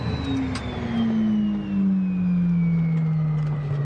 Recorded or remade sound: recorded